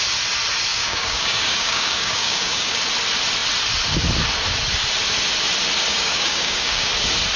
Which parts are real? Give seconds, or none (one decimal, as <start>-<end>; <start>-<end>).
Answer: 0.0-0.7; 2.8-5.9; 6.9-7.4